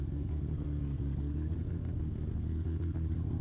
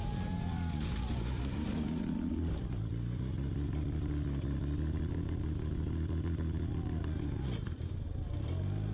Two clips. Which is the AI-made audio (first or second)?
first